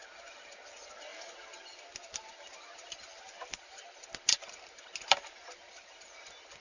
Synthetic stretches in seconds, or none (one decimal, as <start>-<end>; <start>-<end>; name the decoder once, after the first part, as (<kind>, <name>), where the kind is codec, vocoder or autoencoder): none